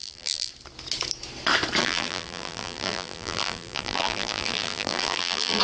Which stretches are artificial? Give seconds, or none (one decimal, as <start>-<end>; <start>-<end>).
0.0-0.5; 1.8-5.6